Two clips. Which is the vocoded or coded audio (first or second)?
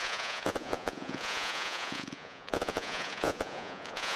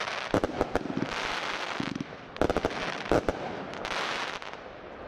first